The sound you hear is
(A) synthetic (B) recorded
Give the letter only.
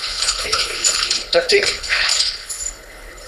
A